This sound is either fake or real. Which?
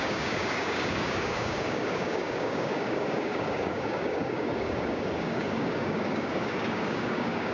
fake